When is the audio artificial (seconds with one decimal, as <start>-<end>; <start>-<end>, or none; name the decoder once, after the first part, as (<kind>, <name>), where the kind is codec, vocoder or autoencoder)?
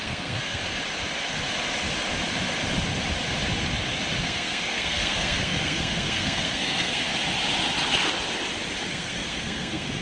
0.0-0.6 (codec, SNAC); 4.2-7.1; 8.9-10.0